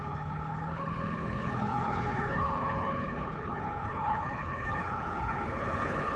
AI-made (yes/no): yes